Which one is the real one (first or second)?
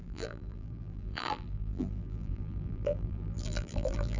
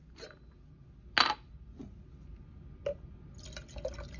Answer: second